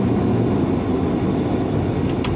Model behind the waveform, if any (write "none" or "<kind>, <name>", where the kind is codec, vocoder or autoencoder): none